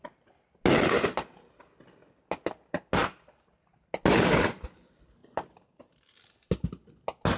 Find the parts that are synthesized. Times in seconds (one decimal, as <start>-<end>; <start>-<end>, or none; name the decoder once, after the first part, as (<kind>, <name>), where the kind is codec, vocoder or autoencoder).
5.2-6.0 (vocoder, BigVGAN v2)